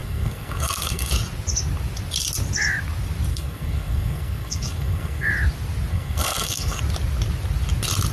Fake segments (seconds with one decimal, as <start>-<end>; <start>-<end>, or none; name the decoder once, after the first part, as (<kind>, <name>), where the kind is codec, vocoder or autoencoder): 0.0-1.1 (codec, SNAC); 3.3-5.3; 5.9-6.8